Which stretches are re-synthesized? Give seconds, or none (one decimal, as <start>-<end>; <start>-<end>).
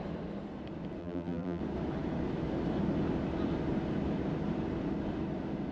1.0-1.6